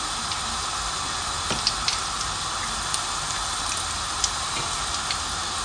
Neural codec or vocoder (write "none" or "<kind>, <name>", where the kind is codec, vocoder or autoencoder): none